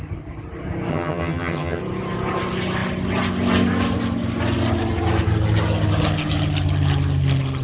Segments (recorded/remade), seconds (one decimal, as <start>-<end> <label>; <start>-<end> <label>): 0.0-0.9 recorded; 0.9-1.8 remade; 1.8-7.6 recorded